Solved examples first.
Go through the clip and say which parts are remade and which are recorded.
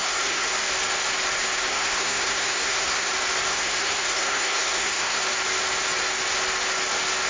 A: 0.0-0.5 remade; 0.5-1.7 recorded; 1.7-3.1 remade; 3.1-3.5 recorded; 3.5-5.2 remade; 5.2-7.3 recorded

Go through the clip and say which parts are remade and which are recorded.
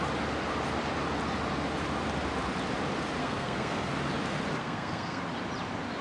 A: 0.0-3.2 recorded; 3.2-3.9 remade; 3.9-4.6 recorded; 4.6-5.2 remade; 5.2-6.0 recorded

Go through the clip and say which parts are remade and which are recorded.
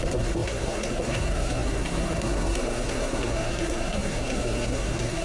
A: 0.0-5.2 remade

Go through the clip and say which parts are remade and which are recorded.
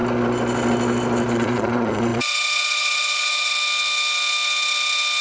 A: 0.0-1.3 recorded; 1.3-3.5 remade; 3.5-5.2 recorded